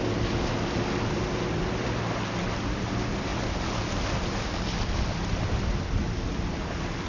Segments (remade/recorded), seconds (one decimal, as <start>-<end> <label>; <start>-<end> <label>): 0.0-7.1 recorded